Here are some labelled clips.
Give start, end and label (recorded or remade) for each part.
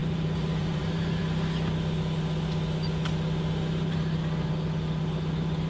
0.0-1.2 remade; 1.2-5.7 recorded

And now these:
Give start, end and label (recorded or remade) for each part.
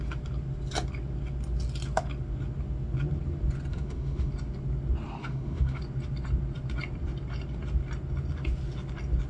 0.0-3.7 recorded; 3.7-4.3 remade; 4.3-5.2 recorded; 5.2-5.8 remade; 5.8-9.3 recorded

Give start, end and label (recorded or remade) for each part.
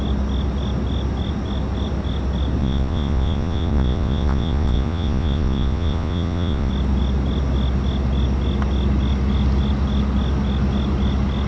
0.0-2.6 recorded; 2.6-6.7 remade; 6.7-11.5 recorded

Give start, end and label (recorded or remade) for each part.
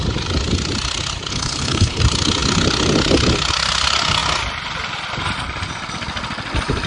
0.0-1.3 recorded; 1.3-2.0 remade; 2.0-6.9 recorded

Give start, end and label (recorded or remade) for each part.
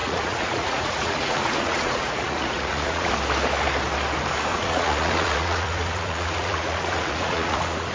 0.0-3.1 remade; 3.1-4.5 recorded; 4.5-7.9 remade